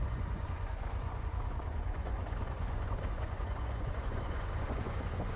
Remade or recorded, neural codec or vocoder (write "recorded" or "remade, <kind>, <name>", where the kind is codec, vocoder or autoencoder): remade, vocoder, Vocos